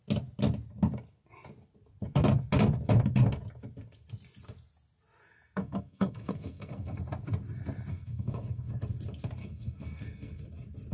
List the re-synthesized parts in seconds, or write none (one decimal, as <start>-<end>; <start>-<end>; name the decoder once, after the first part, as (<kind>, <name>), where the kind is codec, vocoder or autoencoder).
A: 5.6-7.0 (codec, SNAC); 7.9-8.7; 9.4-10.4